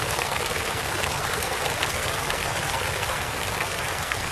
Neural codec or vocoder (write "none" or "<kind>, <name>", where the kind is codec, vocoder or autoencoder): codec, SNAC